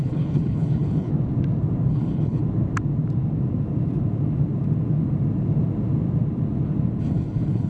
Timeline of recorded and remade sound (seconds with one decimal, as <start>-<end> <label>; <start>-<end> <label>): 0.0-1.1 remade; 1.1-1.9 recorded; 1.9-2.4 remade; 2.4-7.0 recorded; 7.0-7.7 remade